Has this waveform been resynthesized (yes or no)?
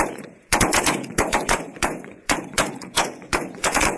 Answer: yes